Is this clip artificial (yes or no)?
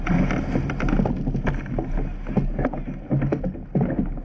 no